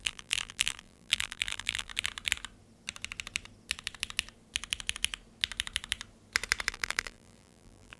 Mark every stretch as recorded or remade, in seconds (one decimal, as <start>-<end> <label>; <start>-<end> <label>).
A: 0.0-1.9 remade; 1.9-6.7 recorded; 6.7-8.0 remade